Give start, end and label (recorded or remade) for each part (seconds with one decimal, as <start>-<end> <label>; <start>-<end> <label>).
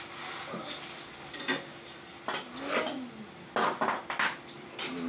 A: 0.0-5.1 recorded